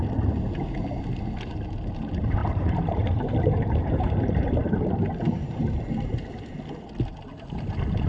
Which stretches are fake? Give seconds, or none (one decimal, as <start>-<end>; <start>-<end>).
2.4-5.9